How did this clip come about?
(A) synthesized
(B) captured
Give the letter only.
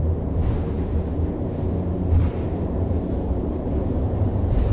A